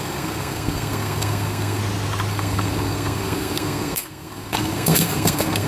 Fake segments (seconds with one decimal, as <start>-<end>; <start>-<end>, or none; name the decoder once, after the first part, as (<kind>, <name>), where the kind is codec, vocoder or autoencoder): 0.0-1.8 (codec, SNAC); 2.3-5.7